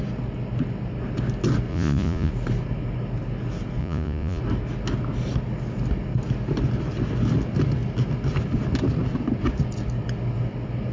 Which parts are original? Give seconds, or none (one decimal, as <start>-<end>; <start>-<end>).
0.0-1.7; 2.3-3.8; 4.4-10.9